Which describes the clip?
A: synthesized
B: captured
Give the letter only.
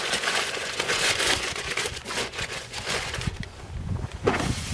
A